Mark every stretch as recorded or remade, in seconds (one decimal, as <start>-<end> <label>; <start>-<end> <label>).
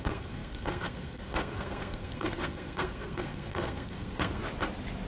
0.0-4.4 remade; 4.4-5.1 recorded